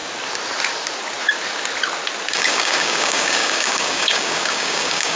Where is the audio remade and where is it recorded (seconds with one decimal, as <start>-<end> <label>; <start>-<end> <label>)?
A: 0.0-2.3 recorded; 2.3-5.2 remade